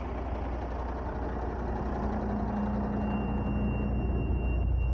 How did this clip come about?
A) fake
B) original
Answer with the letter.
B